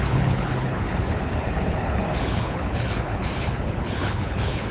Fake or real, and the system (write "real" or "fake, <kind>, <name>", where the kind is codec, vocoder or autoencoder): fake, codec, HILCodec